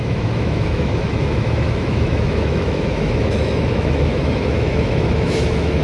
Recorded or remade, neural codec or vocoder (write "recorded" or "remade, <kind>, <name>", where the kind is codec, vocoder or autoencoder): remade, autoencoder, DAC-VAE